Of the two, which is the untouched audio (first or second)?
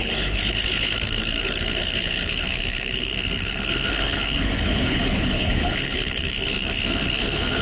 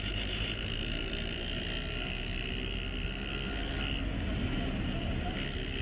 second